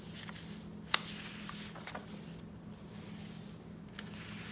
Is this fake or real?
real